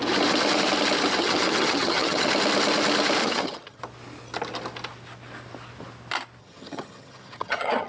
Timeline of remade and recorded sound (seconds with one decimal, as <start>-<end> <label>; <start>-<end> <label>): 0.0-1.2 recorded; 1.2-2.3 remade; 2.3-3.2 recorded; 3.2-3.8 remade; 3.8-6.4 recorded; 6.4-7.9 remade